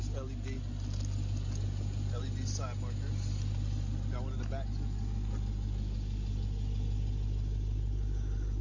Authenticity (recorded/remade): recorded